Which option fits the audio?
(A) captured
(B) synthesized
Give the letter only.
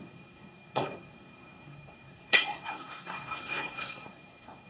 B